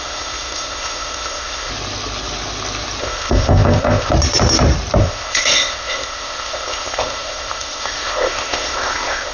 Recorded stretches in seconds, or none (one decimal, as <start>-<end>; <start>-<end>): 1.7-3.0; 4.1-5.0